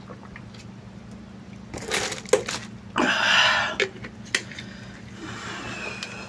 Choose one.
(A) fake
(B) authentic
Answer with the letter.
B